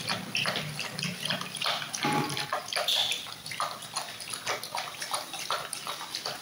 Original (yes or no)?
yes